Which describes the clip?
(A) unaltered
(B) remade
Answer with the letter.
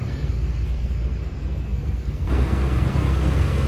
B